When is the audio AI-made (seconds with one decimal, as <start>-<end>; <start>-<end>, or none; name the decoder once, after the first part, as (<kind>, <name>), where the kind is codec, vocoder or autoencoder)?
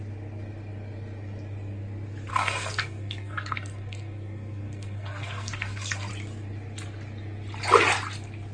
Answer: 2.3-6.1 (codec, SNAC)